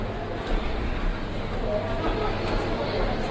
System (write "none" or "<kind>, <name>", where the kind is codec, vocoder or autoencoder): none